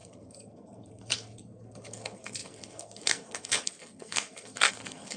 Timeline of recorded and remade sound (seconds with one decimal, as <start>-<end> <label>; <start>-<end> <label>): 0.0-5.2 remade

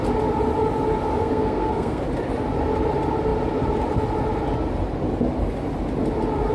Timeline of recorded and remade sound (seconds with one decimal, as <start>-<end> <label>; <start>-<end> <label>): 0.0-1.2 recorded; 1.2-2.0 remade; 2.0-6.5 recorded

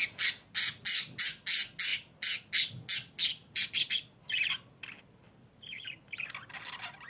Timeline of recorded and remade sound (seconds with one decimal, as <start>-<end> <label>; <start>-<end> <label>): 0.0-7.1 recorded

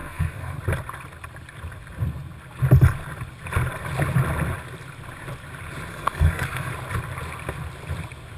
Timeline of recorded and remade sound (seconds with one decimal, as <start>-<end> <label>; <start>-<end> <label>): 0.0-0.6 remade; 0.6-5.9 recorded; 5.9-6.7 remade; 6.7-8.4 recorded

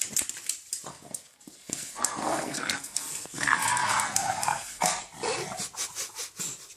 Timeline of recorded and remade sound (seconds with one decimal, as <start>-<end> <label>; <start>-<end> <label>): 0.0-0.9 recorded; 0.9-5.0 remade; 5.0-6.8 recorded

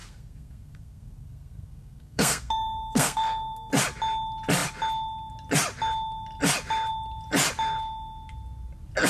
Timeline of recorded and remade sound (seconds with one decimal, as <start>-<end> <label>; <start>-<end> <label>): 0.0-3.7 remade; 3.7-9.1 recorded